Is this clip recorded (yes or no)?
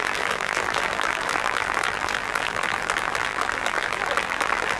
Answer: no